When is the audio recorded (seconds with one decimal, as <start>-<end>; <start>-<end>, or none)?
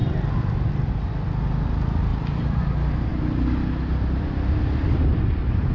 0.0-2.1; 2.6-5.7